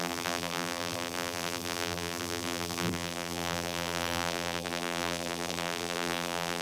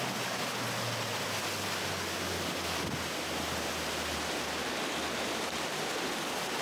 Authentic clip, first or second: second